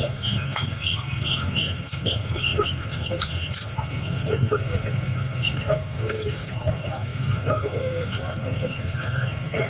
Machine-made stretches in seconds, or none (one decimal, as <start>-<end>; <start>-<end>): 0.0-9.7